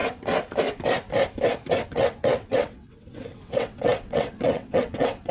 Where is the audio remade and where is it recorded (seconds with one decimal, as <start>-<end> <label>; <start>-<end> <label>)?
0.0-1.8 recorded; 1.8-5.3 remade